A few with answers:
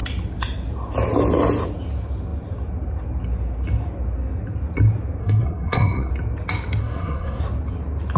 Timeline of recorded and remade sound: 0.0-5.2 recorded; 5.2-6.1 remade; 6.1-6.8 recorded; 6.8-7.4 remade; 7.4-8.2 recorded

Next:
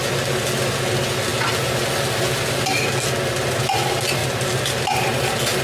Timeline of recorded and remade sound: 0.0-5.6 recorded

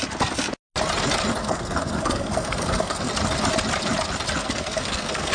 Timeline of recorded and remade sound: 0.0-1.4 recorded; 1.4-3.1 remade; 3.1-4.4 recorded; 4.4-5.3 remade

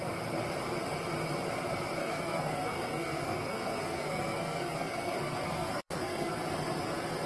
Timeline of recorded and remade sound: 0.0-2.0 recorded; 2.0-6.4 remade; 6.4-7.3 recorded

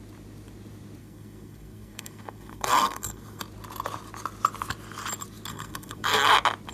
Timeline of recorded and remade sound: 0.0-1.0 recorded; 1.0-3.4 remade; 3.4-5.5 recorded; 5.5-6.3 remade; 6.3-6.7 recorded

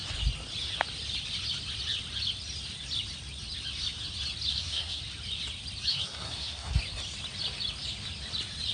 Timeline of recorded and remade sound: 0.0-4.5 recorded; 4.5-5.0 remade; 5.0-5.9 recorded; 5.9-6.8 remade; 6.8-8.7 recorded

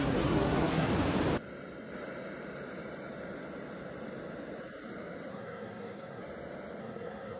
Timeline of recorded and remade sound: 0.0-0.9 remade; 0.9-5.3 recorded; 5.3-6.2 remade; 6.2-6.8 recorded; 6.8-7.4 remade

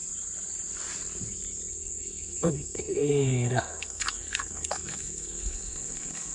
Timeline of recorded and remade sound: 0.0-1.7 recorded; 1.7-6.3 remade